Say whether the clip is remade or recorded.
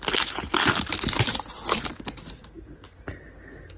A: recorded